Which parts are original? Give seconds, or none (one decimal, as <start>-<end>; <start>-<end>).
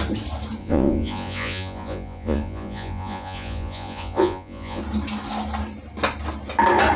0.0-0.6; 4.8-7.0